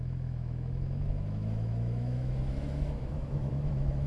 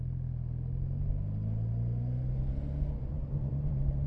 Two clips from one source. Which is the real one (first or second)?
second